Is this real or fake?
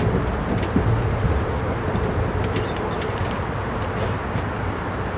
real